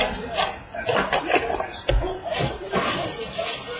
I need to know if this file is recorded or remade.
recorded